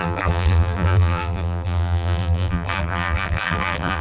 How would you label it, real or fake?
fake